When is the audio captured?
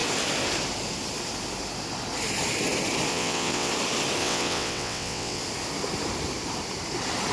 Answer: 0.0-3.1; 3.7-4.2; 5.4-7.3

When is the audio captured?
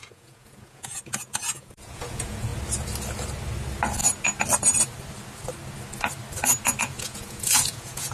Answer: 2.5-6.8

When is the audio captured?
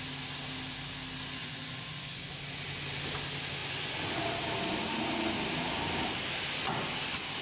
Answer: 0.0-1.4; 2.2-3.6; 4.2-7.4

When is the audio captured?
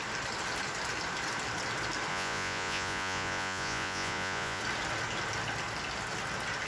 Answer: 0.0-2.1; 4.6-6.7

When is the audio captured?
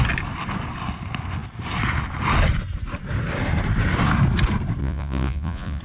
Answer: 0.0-4.8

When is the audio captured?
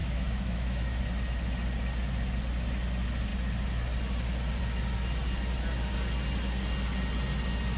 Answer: 1.0-7.8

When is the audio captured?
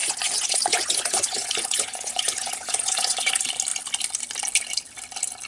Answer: 3.3-5.5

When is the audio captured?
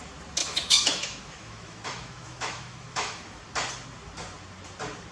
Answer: 0.0-0.4; 3.4-5.1